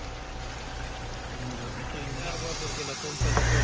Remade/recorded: recorded